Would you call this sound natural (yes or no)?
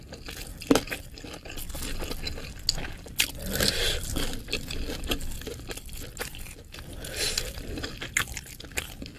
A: yes